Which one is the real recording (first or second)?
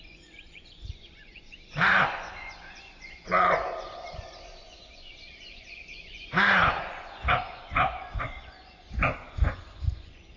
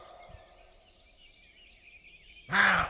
second